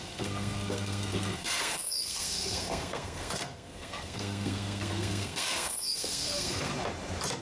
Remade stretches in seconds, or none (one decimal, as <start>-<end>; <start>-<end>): 0.0-6.7